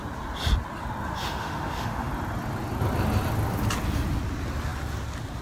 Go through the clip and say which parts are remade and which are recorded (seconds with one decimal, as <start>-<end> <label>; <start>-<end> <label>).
0.0-1.2 recorded; 1.2-2.1 remade; 2.1-5.4 recorded

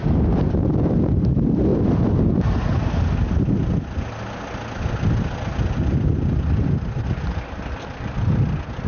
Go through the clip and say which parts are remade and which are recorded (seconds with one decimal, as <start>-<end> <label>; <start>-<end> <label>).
0.0-8.9 recorded

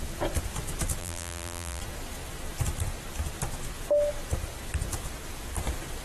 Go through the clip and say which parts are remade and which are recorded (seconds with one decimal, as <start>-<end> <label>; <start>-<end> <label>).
0.0-1.0 recorded; 1.0-1.8 remade; 1.8-6.0 recorded

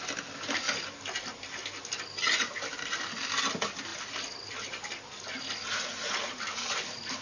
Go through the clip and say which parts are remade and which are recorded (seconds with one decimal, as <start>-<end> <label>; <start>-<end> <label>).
0.0-7.2 recorded

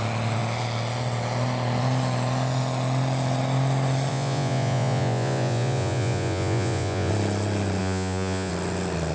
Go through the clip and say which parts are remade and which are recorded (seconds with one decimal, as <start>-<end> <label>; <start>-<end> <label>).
0.0-4.1 recorded; 4.1-7.1 remade; 7.1-7.8 recorded; 7.8-8.5 remade; 8.5-9.1 recorded